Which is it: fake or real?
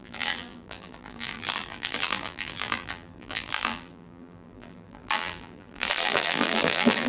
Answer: fake